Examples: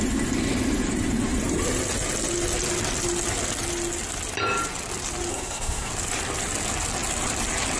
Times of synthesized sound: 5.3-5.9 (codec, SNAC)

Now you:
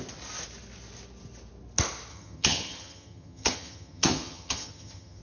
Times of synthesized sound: 2.1-5.2 (vocoder, HiFi-GAN)

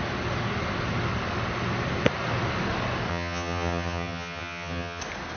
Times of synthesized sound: 3.1-5.0 (vocoder, HiFi-GAN)